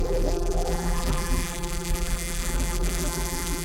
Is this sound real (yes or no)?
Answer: no